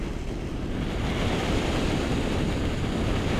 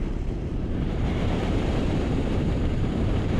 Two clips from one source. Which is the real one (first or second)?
first